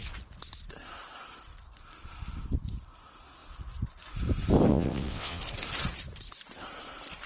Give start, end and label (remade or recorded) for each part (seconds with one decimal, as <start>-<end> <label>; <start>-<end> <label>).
0.0-4.7 recorded; 4.7-5.4 remade; 5.4-7.3 recorded